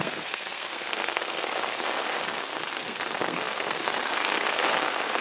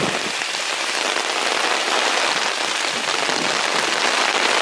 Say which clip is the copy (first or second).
first